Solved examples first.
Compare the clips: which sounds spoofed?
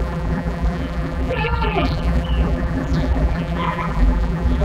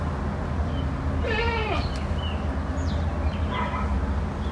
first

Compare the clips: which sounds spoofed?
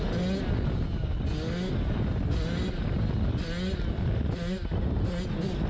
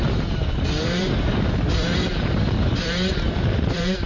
second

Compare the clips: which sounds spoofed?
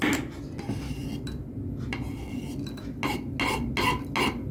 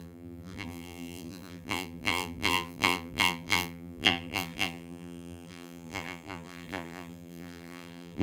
second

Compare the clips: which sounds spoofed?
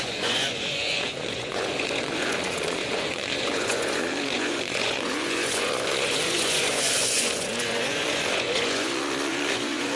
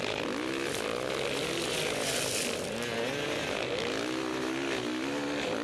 first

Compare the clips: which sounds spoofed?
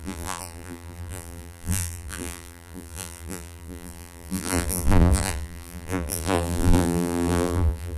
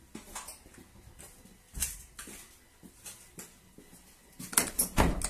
first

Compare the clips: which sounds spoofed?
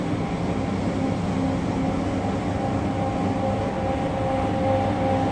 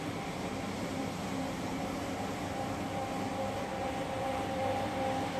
second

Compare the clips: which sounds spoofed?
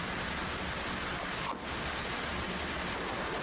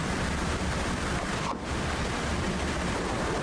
second